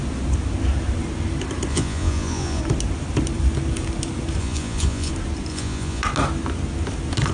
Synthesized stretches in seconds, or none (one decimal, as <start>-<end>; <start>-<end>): 1.7-2.6; 4.4-5.1; 5.5-6.0